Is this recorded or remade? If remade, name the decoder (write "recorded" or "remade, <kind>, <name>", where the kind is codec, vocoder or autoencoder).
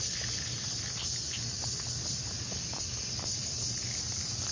recorded